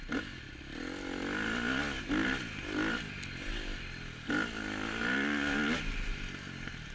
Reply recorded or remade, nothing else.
recorded